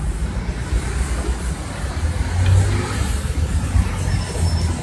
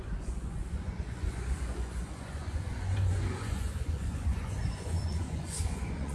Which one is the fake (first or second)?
second